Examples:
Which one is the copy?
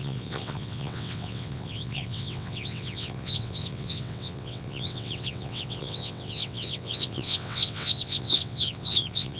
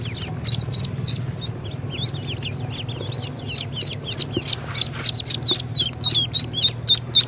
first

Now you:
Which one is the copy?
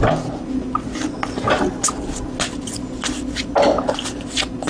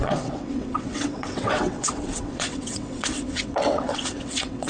second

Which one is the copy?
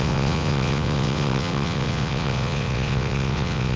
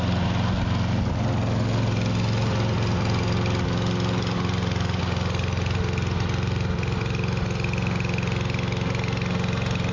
first